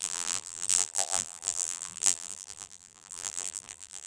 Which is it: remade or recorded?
remade